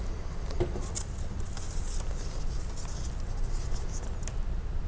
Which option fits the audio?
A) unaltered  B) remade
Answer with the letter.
A